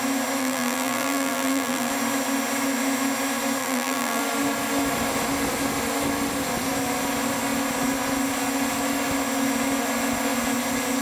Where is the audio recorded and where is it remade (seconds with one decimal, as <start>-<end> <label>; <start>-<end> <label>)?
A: 0.0-0.4 recorded; 0.4-1.9 remade; 1.9-3.6 recorded; 3.6-4.2 remade; 4.2-11.0 recorded